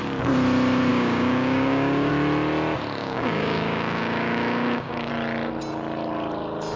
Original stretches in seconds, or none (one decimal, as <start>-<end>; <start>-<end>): 0.0-0.9; 2.1-3.0; 5.1-6.8